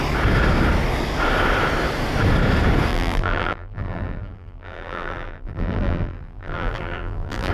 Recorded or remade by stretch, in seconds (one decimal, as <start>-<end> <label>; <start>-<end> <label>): 0.0-2.9 recorded; 2.9-7.5 remade

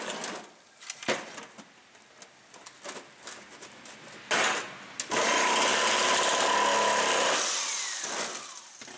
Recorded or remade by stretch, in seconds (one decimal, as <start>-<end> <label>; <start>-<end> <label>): 0.0-9.0 recorded

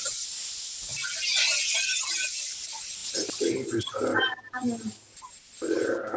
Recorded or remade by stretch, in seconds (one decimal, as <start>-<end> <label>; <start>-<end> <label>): 0.0-6.2 recorded

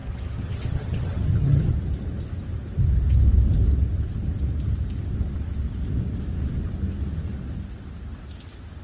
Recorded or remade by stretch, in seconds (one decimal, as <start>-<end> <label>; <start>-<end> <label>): 0.0-1.7 remade; 1.7-8.8 recorded

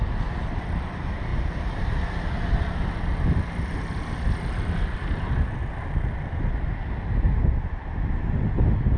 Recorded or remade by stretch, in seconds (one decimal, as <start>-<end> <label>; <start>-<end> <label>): 0.0-9.0 recorded

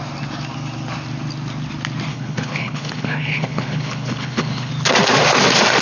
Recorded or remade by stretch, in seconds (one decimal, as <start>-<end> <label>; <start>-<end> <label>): 0.0-2.1 recorded; 2.1-4.7 remade; 4.7-5.8 recorded